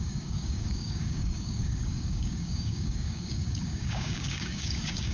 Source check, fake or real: fake